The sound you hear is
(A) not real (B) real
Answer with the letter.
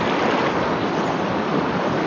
B